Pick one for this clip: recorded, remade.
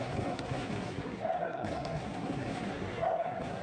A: remade